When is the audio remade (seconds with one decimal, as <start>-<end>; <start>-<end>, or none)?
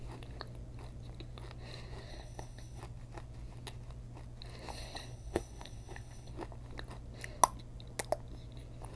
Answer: 2.1-2.8; 4.7-6.3